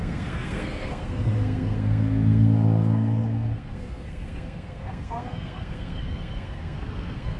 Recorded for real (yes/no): no